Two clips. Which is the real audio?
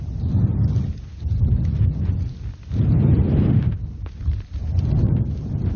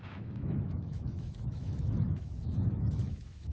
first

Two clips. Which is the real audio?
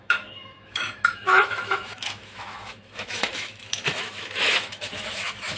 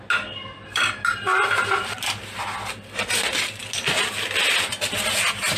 second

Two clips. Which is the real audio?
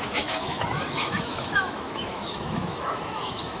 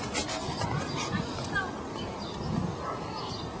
second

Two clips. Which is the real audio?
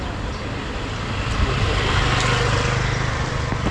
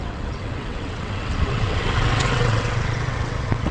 first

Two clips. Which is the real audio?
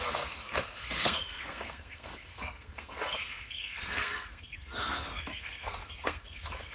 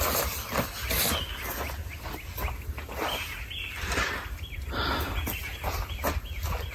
second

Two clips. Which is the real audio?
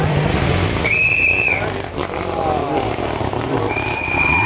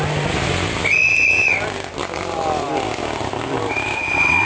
second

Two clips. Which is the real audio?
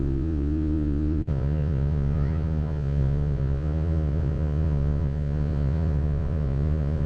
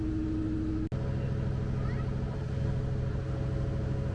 second